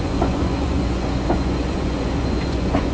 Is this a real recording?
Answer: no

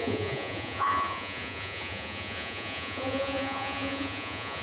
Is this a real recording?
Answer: no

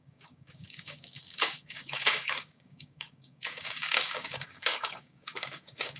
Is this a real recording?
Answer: no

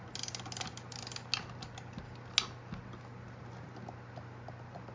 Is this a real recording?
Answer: yes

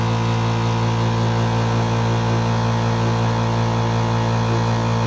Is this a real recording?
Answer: yes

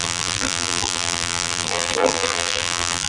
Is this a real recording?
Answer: no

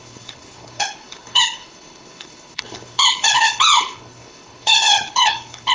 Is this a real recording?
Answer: no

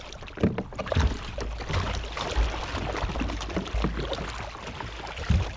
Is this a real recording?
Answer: yes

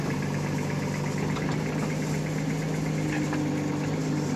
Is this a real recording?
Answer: yes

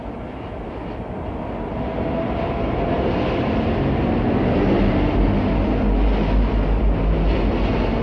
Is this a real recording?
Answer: yes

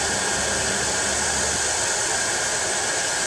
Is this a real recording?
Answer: yes